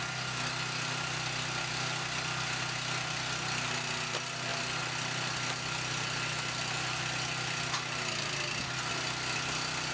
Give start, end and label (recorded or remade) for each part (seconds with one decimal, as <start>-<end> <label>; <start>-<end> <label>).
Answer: 0.0-9.9 recorded